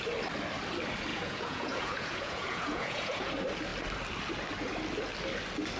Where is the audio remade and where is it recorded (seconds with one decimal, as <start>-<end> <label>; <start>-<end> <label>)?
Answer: 0.0-1.1 recorded; 1.1-3.3 remade; 3.3-5.8 recorded